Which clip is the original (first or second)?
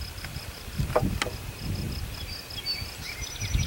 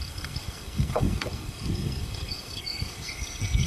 first